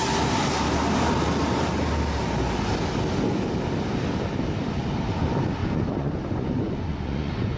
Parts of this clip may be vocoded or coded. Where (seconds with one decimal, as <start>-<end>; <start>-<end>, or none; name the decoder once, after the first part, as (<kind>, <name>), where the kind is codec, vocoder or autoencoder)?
5.6-7.6 (vocoder, Vocos)